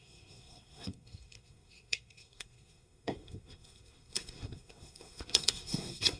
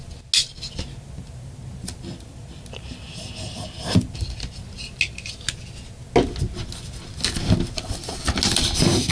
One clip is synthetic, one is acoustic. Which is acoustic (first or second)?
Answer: second